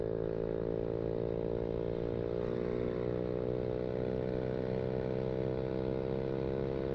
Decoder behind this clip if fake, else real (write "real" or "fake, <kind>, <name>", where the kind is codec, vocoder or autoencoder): real